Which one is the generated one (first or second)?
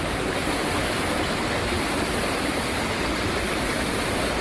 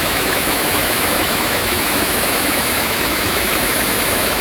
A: second